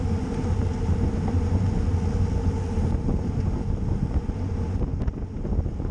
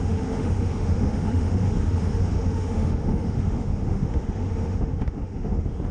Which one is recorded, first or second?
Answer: first